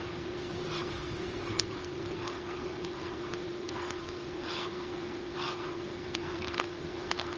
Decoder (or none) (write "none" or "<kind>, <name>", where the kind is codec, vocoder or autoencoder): codec, SNAC